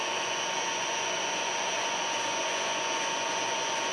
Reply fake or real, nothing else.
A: fake